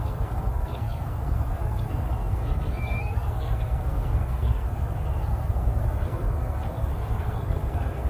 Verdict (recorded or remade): remade